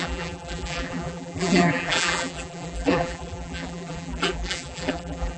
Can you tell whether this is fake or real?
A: fake